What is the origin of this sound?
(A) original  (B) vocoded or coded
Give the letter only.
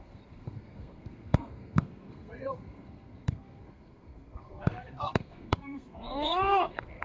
B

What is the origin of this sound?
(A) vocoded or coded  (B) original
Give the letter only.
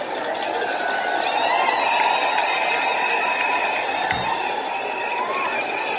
B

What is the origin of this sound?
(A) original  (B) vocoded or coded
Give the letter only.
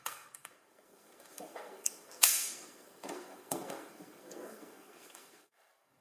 B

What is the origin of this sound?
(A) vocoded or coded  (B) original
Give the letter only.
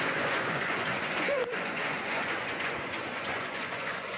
A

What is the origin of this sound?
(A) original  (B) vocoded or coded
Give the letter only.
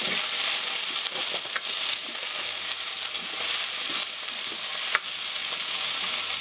A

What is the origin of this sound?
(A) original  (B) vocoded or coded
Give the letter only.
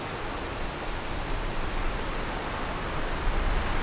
A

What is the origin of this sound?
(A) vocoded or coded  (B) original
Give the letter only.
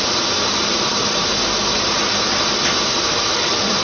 B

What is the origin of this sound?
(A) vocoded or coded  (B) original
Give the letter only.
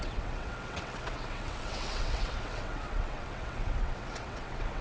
A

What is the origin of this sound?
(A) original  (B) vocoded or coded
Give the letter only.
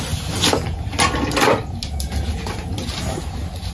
A